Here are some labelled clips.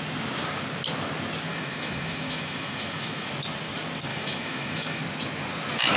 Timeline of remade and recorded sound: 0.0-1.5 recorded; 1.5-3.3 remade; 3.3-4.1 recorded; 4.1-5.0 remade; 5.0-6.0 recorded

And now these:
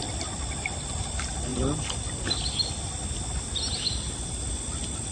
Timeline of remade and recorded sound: 0.0-5.1 recorded

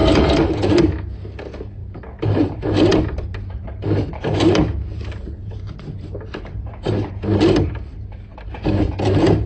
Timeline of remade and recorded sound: 0.0-0.7 remade; 0.7-1.8 recorded; 1.8-6.7 remade; 6.7-9.5 recorded

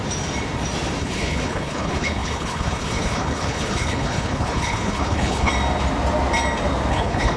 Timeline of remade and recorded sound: 0.0-1.0 recorded; 1.0-5.5 remade; 5.5-6.9 recorded; 6.9-7.4 remade

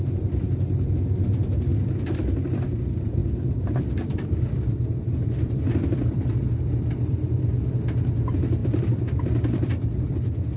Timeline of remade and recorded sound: 0.0-3.2 recorded; 3.2-7.7 remade; 7.7-8.6 recorded; 8.6-10.6 remade

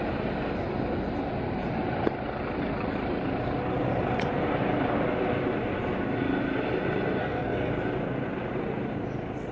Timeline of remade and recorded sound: 0.0-7.2 recorded; 7.2-7.7 remade; 7.7-9.5 recorded